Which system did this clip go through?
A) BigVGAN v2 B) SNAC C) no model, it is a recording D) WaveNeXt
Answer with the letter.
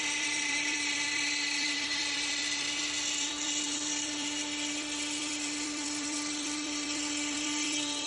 A